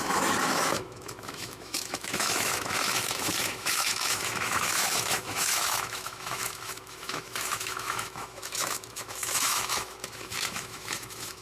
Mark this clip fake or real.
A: fake